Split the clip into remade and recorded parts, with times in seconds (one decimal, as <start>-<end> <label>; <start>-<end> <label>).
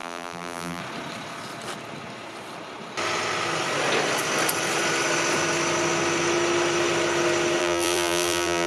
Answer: 0.0-0.8 remade; 0.8-7.6 recorded; 7.6-8.7 remade